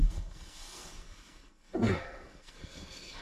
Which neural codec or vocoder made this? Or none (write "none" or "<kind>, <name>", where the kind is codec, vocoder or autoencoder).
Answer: codec, SNAC